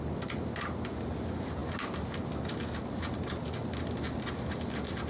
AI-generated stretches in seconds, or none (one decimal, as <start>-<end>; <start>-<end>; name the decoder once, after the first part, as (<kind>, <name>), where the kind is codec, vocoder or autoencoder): none